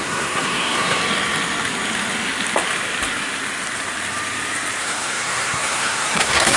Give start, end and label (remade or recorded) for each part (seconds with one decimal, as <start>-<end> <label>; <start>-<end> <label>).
0.0-1.0 remade; 1.0-4.8 recorded; 4.8-6.6 remade